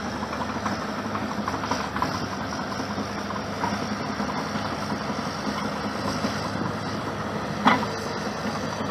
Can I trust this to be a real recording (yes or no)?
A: yes